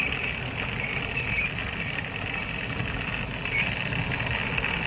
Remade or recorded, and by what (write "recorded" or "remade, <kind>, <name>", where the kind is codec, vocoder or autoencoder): recorded